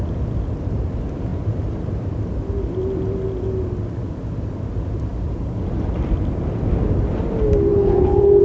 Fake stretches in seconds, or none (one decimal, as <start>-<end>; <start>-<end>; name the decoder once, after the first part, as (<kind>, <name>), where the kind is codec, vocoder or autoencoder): 7.7-8.4 (codec, HILCodec)